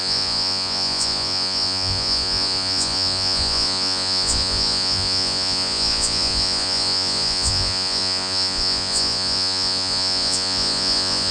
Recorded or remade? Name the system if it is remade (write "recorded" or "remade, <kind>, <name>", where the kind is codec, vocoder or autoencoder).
remade, vocoder, Vocos